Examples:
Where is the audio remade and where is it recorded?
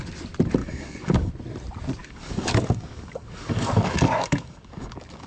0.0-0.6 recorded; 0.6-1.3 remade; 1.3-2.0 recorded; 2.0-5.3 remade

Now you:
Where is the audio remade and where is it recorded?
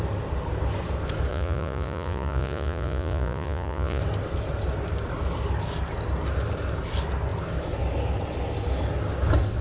0.0-1.3 recorded; 1.3-4.0 remade; 4.0-9.6 recorded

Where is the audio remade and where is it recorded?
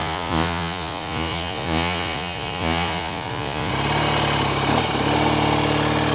0.0-3.7 remade; 3.7-6.1 recorded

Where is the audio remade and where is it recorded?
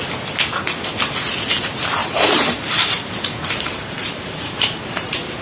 0.0-2.0 recorded; 2.0-5.4 remade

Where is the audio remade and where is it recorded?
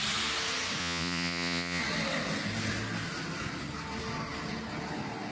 0.0-0.8 recorded; 0.8-1.8 remade; 1.8-5.3 recorded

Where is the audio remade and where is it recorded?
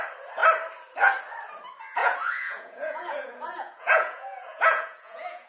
0.0-2.0 recorded; 2.0-5.5 remade